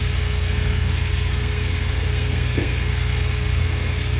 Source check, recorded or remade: remade